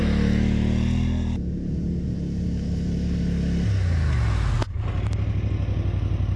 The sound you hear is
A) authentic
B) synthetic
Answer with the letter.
A